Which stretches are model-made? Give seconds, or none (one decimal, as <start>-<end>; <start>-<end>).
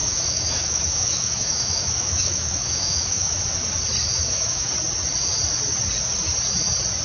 0.0-3.4; 4.1-4.7